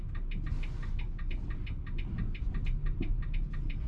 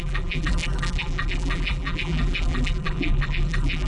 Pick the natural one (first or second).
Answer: first